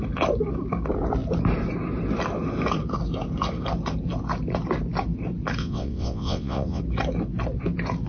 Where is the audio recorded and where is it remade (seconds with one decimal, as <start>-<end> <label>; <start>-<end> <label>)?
0.0-5.6 recorded; 5.6-6.8 remade; 6.8-8.1 recorded